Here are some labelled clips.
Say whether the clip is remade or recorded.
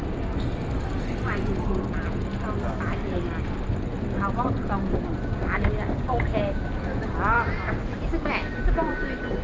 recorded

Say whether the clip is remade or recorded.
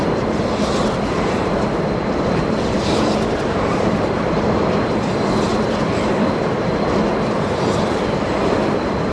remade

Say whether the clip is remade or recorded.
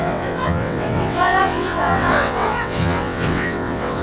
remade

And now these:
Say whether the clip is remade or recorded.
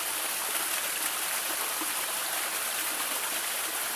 recorded